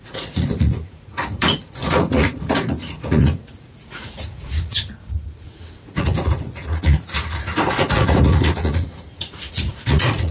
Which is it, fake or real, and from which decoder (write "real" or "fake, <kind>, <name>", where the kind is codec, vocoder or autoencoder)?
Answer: fake, vocoder, Vocos